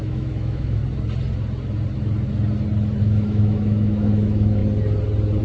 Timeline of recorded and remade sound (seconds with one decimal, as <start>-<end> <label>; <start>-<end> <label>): 0.0-0.8 remade; 0.8-3.0 recorded; 3.0-4.6 remade; 4.6-5.4 recorded